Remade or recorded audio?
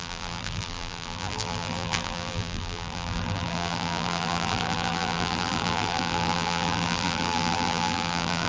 remade